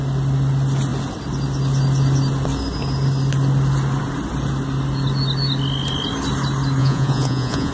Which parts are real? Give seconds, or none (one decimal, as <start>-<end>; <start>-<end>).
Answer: 0.0-6.8